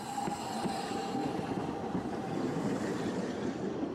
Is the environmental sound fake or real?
real